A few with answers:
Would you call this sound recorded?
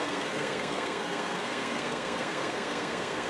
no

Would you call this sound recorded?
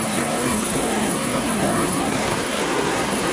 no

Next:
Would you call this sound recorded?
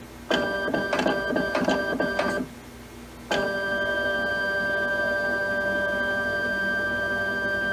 yes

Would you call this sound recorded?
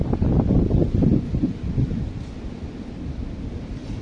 yes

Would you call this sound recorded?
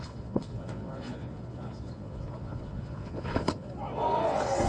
no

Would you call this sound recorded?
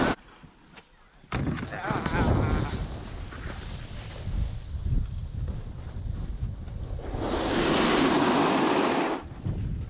yes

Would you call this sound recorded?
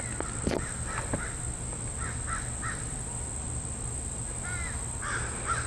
yes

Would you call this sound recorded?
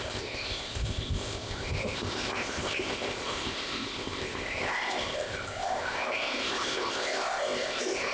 no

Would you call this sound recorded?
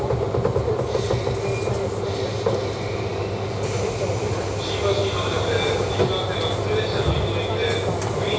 yes